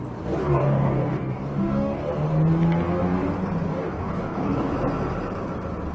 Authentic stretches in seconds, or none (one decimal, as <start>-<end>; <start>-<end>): 0.0-0.4; 2.0-3.7; 4.7-5.9